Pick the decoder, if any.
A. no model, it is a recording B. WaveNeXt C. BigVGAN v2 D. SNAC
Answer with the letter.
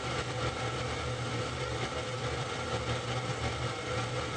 A